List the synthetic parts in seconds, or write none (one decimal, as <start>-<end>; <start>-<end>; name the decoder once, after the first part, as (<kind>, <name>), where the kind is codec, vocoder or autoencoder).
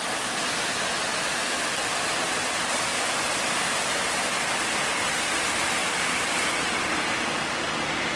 1.1-1.7 (autoencoder, DAC-VAE)